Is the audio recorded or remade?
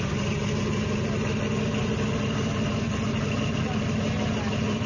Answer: recorded